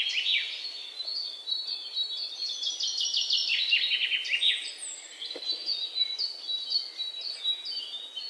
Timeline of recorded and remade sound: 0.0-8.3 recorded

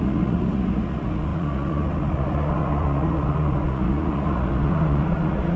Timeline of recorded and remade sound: 0.0-5.6 remade

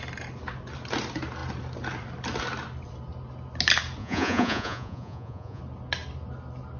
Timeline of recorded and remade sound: 0.0-4.0 recorded; 4.0-5.6 remade; 5.6-6.8 recorded

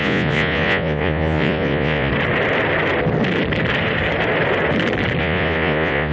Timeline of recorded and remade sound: 0.0-2.1 remade; 2.1-5.2 recorded; 5.2-6.1 remade